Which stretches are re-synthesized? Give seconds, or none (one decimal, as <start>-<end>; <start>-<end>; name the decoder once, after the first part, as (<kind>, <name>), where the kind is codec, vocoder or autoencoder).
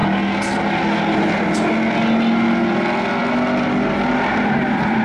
none